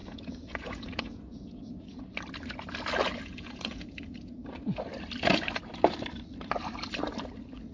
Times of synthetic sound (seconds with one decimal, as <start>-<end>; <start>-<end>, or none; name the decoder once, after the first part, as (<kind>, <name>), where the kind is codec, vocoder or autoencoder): 0.0-2.0 (vocoder, Vocos); 3.3-4.4